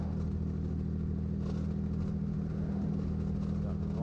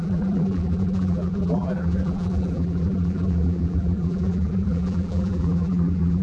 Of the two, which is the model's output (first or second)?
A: second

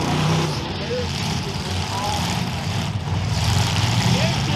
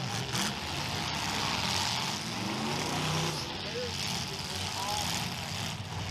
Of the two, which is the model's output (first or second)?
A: first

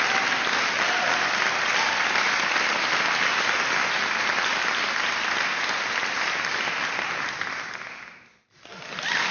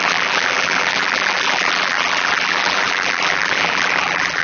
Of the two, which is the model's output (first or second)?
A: second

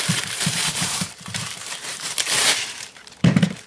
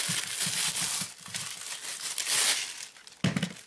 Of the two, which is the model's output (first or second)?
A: first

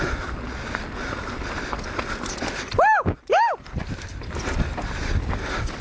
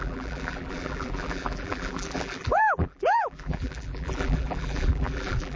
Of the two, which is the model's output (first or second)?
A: second